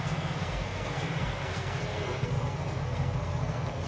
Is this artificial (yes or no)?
yes